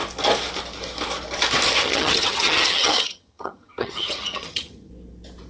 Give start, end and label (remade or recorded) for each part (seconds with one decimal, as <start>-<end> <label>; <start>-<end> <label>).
0.0-1.8 recorded; 1.8-4.9 remade; 4.9-5.5 recorded

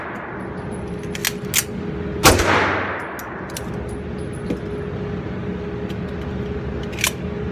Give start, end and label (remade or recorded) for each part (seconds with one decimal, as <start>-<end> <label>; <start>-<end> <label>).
0.0-7.5 recorded

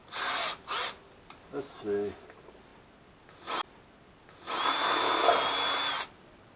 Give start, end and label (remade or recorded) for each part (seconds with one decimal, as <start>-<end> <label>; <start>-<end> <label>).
0.0-6.6 recorded

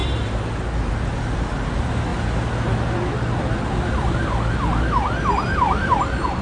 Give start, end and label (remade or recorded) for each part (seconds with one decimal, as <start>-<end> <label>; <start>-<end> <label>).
0.0-6.4 recorded

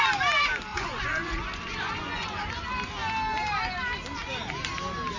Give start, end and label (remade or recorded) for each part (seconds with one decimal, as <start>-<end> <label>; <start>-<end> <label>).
0.0-0.7 recorded; 0.7-2.4 remade; 2.4-5.2 recorded

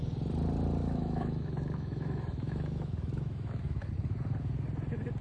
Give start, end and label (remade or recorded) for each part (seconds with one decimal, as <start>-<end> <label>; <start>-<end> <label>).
0.0-0.8 recorded; 0.8-3.9 remade; 3.9-5.2 recorded

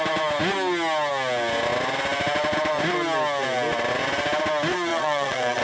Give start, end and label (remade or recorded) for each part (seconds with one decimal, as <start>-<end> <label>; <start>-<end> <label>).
0.0-4.9 recorded; 4.9-5.6 remade

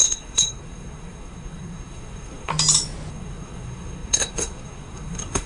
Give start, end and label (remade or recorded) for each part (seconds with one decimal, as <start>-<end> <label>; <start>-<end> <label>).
0.0-2.5 remade; 2.5-3.1 recorded; 3.1-5.5 remade